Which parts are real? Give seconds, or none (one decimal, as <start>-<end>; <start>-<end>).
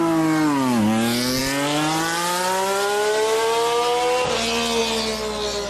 0.0-5.7